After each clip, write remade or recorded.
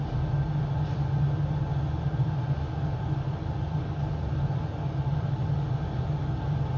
recorded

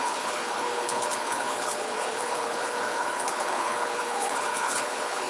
remade